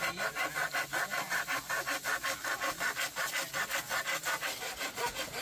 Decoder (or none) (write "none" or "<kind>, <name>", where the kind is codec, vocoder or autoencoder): none